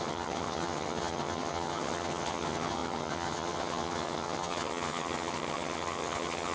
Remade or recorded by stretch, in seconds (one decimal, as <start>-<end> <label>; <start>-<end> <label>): 0.0-6.5 remade